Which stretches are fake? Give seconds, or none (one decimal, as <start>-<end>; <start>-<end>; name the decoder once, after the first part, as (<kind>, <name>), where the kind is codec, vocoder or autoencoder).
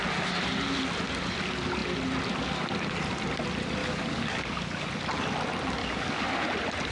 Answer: 3.8-4.9 (codec, DAC); 5.8-6.4